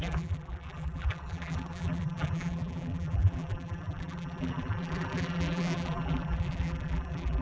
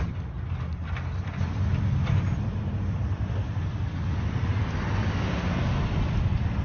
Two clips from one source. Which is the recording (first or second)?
second